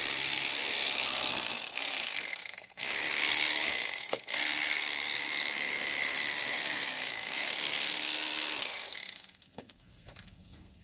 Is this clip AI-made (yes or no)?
yes